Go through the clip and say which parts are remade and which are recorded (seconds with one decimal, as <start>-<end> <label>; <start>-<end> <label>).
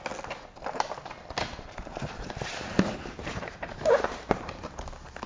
0.0-1.9 recorded; 1.9-4.5 remade; 4.5-5.3 recorded